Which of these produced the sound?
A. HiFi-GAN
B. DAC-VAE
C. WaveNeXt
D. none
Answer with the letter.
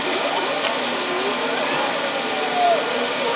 D